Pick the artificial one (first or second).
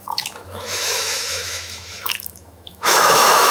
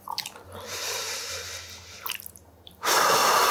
first